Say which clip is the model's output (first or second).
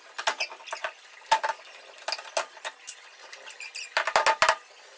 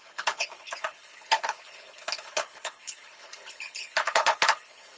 second